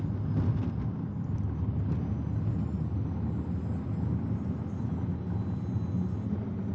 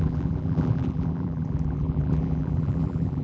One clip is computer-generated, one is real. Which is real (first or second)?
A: first